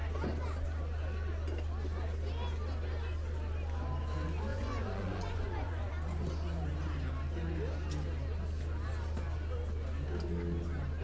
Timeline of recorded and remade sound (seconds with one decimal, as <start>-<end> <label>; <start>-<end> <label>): 0.0-4.5 recorded; 4.5-5.9 remade; 5.9-11.0 recorded